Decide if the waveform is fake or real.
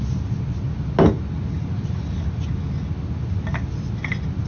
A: real